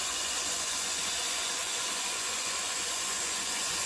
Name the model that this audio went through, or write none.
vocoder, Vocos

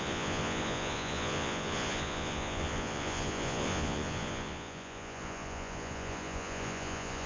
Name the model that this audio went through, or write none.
vocoder, Vocos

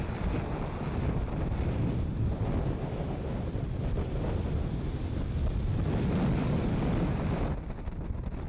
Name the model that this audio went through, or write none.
none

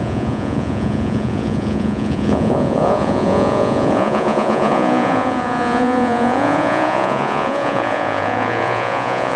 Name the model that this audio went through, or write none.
vocoder, Vocos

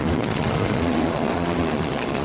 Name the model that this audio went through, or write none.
vocoder, Vocos